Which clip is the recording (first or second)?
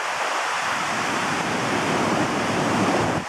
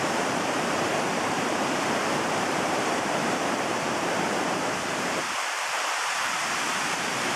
first